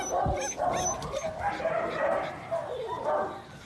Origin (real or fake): real